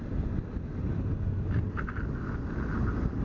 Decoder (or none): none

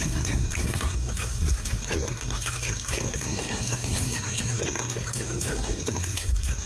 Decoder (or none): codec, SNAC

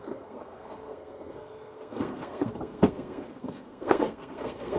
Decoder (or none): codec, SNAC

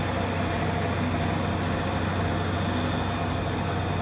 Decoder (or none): none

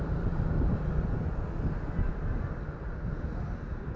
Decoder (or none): none